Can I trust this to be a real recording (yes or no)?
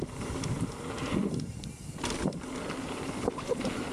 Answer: yes